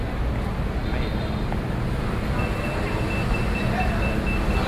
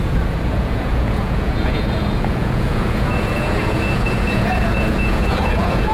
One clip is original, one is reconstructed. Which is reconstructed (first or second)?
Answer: second